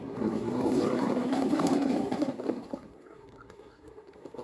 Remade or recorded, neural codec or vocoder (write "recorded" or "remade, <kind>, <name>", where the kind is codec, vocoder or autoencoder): remade, codec, SNAC